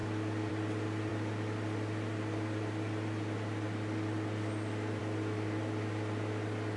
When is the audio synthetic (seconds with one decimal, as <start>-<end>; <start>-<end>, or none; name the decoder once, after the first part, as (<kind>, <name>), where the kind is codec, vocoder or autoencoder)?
none